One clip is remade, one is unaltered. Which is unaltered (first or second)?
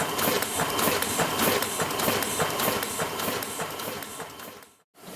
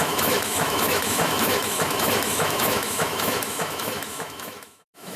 first